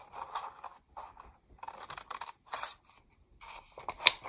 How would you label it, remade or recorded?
recorded